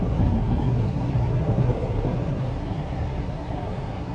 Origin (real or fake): fake